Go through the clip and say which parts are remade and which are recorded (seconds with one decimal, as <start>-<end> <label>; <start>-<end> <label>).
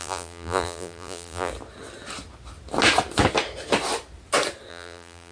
0.0-1.5 remade; 1.5-4.7 recorded; 4.7-5.3 remade